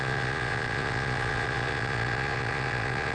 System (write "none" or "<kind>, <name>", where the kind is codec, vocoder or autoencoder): vocoder, Vocos